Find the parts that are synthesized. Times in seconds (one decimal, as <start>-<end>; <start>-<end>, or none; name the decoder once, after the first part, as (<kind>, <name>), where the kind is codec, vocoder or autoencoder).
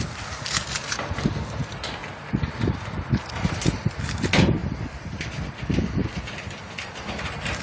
4.6-6.9 (vocoder, BigVGAN v2)